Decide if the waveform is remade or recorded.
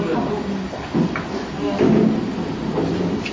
recorded